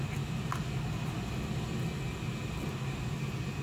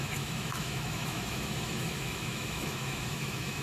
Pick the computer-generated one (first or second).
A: second